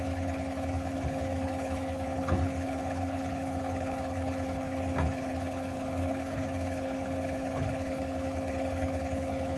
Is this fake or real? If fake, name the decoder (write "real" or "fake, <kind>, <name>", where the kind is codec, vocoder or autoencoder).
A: fake, codec, HILCodec